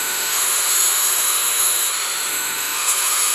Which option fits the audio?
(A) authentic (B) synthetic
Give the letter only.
B